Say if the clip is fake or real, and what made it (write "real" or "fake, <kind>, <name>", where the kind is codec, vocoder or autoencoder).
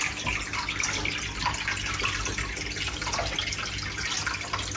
real